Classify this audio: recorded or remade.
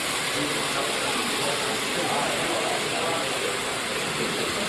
recorded